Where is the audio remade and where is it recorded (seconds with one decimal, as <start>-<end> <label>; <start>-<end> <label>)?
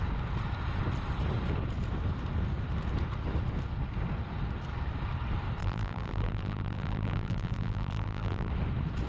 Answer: 0.0-5.6 recorded; 5.6-8.5 remade; 8.5-9.1 recorded